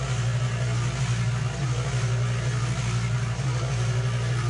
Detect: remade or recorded recorded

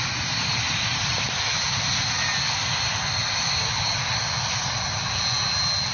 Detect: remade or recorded recorded